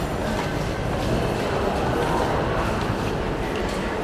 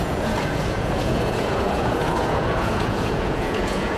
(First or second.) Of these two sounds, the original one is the first